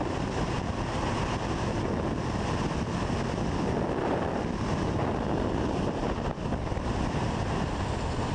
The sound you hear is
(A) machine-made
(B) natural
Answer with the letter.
B